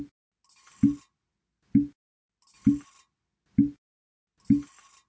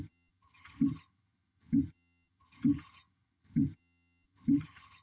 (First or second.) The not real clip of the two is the second